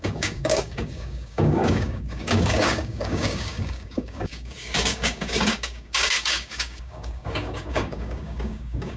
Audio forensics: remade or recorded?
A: remade